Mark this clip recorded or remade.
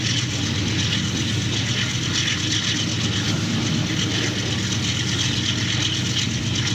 recorded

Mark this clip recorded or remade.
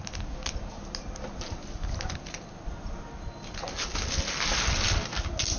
recorded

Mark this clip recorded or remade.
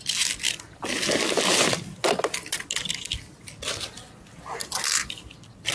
recorded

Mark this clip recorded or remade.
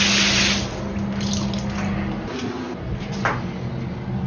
recorded